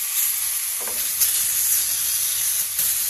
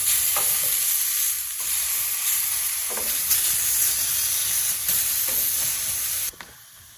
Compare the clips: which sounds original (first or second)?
first